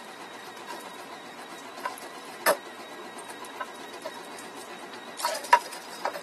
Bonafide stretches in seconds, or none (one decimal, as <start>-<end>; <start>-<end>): 0.0-5.3